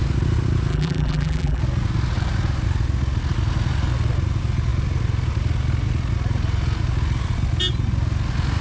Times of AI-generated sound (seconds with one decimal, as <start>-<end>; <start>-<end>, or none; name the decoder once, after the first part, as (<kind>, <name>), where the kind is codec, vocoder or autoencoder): 0.7-1.6 (vocoder, BigVGAN v2)